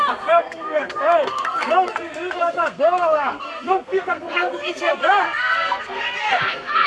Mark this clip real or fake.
fake